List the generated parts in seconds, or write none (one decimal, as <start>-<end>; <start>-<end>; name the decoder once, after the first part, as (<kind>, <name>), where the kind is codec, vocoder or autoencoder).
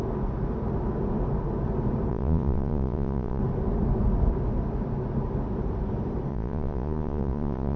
2.1-3.4 (vocoder, Vocos); 6.3-7.8